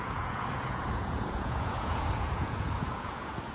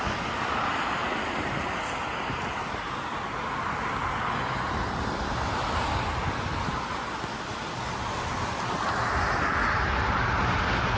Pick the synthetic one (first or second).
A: first